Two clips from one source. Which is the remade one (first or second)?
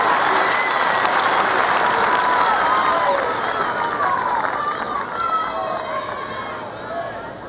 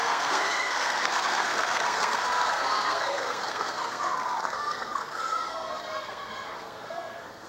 second